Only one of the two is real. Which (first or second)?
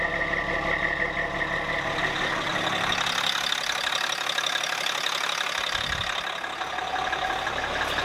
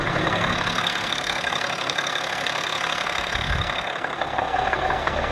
first